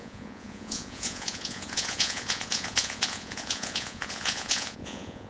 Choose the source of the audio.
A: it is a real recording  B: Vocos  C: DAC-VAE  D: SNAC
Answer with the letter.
B